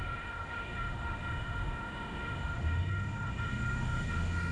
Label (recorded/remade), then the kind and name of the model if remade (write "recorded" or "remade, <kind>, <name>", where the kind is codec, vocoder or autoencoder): remade, autoencoder, DAC-VAE